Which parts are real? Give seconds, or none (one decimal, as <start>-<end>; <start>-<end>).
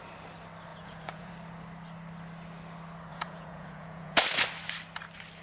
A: 0.0-0.7; 1.3-3.1; 4.2-5.4